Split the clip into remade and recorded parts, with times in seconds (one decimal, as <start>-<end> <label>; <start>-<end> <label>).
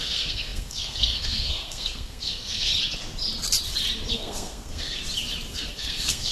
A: 0.0-2.7 remade; 2.7-4.1 recorded; 4.1-5.0 remade; 5.0-5.5 recorded; 5.5-6.3 remade